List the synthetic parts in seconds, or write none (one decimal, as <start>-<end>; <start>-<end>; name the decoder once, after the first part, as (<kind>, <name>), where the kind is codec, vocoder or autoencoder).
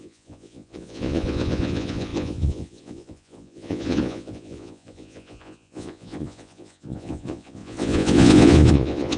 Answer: 0.0-9.2 (vocoder, Vocos)